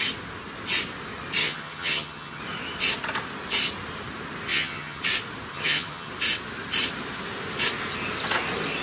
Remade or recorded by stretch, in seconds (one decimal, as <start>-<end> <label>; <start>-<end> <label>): 0.0-1.4 recorded; 1.4-2.4 remade; 2.4-4.5 recorded; 4.5-5.0 remade; 5.0-5.5 recorded; 5.5-6.1 remade; 6.1-8.8 recorded